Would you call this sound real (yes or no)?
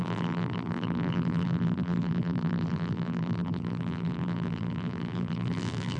no